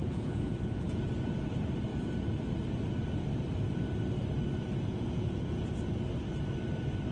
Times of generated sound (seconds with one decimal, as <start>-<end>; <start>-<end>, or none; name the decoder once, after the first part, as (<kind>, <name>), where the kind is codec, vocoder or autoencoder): 0.0-1.0 (vocoder, Vocos); 4.9-5.7